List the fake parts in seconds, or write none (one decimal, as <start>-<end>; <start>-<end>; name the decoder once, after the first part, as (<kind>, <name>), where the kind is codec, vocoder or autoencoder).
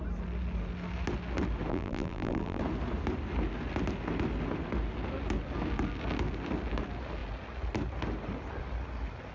1.7-2.6 (vocoder, BigVGAN v2)